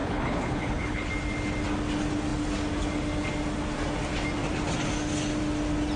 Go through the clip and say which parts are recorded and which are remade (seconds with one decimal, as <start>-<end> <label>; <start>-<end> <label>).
0.0-1.1 remade; 1.1-6.0 recorded